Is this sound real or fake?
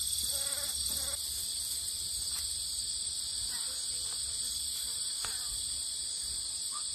real